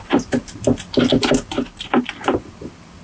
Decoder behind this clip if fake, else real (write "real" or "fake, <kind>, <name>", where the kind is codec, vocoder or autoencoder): real